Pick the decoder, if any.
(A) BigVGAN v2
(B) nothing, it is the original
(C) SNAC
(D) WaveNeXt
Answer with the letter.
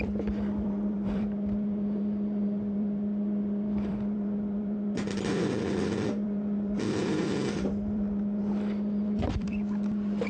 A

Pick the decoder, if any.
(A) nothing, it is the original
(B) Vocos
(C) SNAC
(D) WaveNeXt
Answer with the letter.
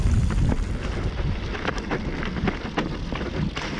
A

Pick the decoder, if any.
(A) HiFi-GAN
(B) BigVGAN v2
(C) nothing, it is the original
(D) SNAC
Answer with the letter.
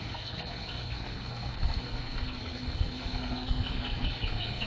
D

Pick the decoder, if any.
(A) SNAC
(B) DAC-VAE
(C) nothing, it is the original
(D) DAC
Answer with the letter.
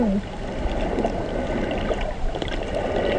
C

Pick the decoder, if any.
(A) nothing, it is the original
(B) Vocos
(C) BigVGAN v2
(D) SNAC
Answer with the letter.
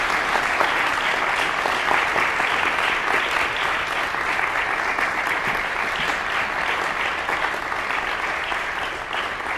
A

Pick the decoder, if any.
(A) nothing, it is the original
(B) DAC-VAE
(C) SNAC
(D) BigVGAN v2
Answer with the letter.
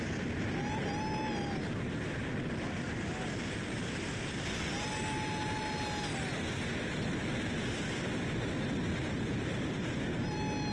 A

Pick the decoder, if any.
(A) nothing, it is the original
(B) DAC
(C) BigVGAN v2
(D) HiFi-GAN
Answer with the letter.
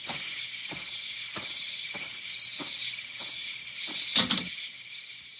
A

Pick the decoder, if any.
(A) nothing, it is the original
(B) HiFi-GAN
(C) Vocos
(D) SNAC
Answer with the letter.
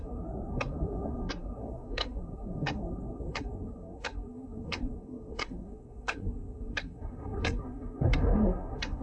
D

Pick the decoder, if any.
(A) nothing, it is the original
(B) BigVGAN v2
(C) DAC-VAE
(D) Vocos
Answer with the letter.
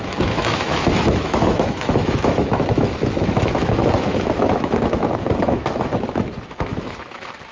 C